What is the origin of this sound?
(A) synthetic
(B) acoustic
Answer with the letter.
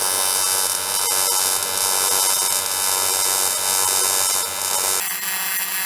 B